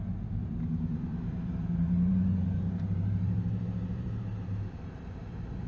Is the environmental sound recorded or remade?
remade